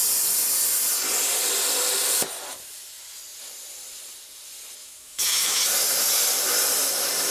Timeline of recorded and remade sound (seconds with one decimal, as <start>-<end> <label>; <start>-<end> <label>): 0.0-4.8 recorded; 4.8-5.6 remade; 5.6-7.3 recorded